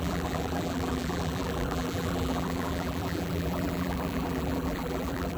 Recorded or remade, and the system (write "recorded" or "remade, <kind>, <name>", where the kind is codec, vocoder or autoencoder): remade, vocoder, BigVGAN v2